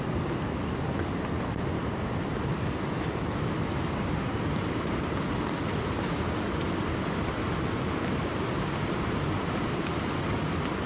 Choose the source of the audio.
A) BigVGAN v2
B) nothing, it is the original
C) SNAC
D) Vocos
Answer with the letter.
B